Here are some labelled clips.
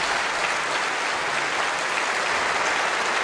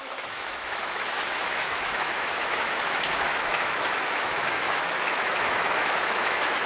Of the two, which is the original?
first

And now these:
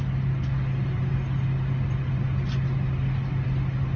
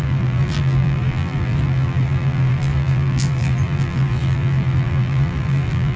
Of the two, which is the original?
first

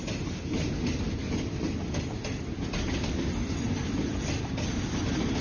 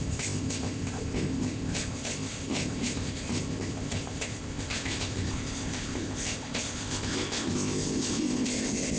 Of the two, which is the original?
first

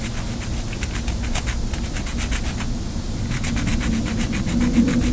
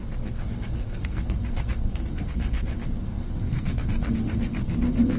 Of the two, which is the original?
first